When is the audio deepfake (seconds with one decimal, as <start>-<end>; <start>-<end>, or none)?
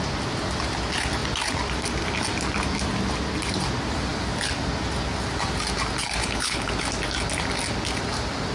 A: 6.2-6.7